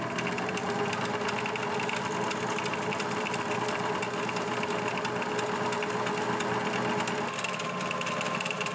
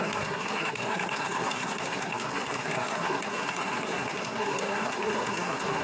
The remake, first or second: second